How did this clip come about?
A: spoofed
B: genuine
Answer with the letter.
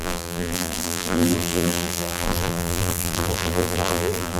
A